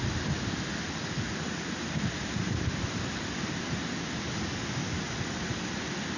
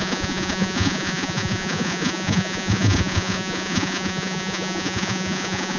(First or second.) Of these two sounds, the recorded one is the first